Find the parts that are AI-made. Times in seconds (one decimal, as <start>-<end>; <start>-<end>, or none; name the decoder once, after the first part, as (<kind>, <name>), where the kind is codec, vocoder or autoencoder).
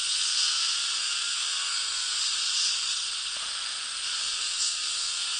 0.0-2.1 (codec, SNAC); 4.2-5.4